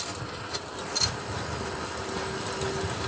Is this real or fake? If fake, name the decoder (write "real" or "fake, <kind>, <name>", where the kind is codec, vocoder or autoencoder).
real